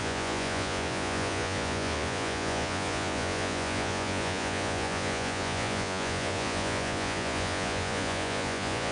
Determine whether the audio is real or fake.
fake